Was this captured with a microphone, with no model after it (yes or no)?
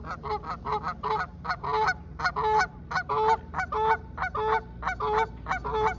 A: yes